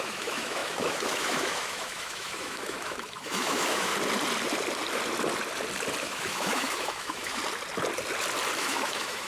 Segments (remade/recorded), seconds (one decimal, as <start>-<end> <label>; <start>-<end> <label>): 0.0-3.9 remade; 3.9-6.0 recorded; 6.0-7.4 remade; 7.4-8.6 recorded; 8.6-9.3 remade